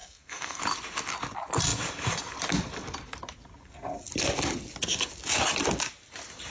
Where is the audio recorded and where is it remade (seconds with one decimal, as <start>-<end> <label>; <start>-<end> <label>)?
0.0-0.6 remade; 0.6-6.5 recorded